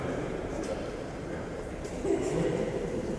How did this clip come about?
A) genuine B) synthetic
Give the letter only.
B